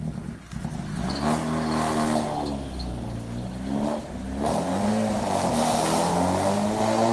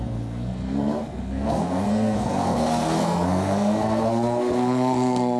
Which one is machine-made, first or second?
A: second